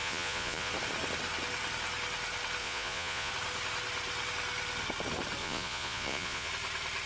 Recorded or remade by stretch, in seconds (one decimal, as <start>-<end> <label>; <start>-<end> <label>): 0.0-0.7 remade; 0.7-2.6 recorded; 2.6-3.3 remade; 3.3-5.4 recorded; 5.4-6.5 remade; 6.5-7.1 recorded